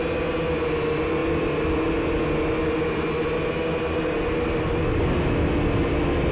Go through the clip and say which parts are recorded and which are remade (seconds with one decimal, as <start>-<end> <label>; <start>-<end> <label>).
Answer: 0.0-6.3 recorded